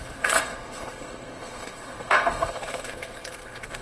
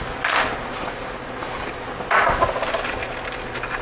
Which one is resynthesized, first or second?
first